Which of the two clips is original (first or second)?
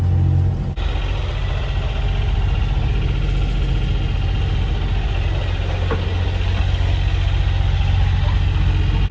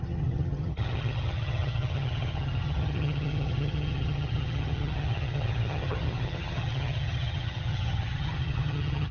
first